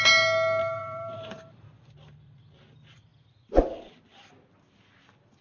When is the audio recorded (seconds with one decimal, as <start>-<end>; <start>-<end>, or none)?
0.0-0.6; 2.6-5.4